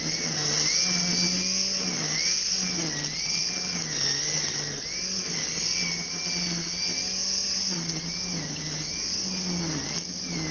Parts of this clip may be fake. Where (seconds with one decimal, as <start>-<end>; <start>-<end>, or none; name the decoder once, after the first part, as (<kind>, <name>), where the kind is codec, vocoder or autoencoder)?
none